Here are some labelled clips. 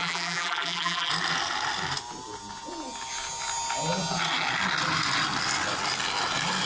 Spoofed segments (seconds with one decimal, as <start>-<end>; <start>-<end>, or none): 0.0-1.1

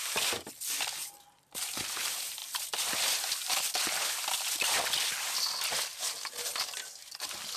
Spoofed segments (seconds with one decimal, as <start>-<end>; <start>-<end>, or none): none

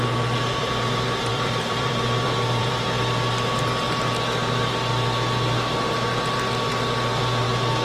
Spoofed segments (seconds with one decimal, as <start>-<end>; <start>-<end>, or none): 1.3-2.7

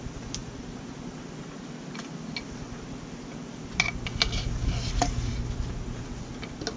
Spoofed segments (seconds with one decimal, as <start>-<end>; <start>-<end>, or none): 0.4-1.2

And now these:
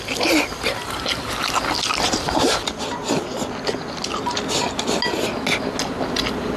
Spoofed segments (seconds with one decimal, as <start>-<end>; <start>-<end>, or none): none